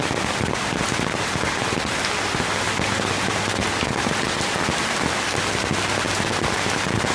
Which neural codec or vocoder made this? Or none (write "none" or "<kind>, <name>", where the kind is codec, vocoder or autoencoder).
none